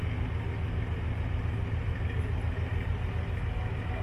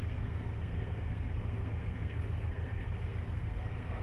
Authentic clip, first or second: first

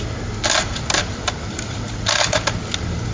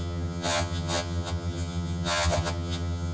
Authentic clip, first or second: first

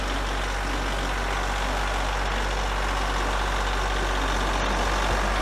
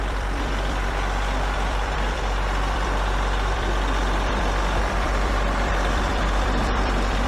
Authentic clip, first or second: first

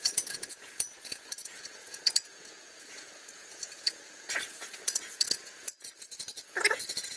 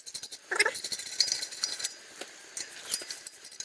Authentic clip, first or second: second